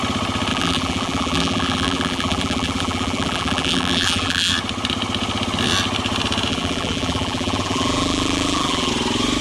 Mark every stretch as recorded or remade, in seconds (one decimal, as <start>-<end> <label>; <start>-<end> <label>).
0.0-0.5 recorded; 0.5-4.5 remade; 4.5-6.5 recorded; 6.5-8.9 remade; 8.9-9.4 recorded